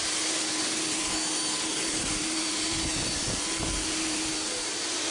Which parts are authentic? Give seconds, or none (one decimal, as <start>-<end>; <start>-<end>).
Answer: 0.0-1.7; 2.2-5.1